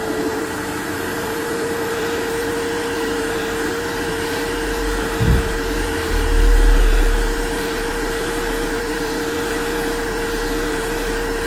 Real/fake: fake